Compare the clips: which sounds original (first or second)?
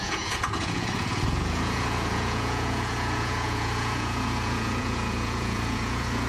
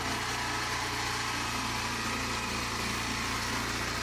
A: second